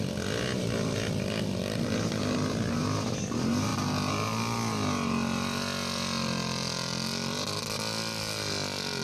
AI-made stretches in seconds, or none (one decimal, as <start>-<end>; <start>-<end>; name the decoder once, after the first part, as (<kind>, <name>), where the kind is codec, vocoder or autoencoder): none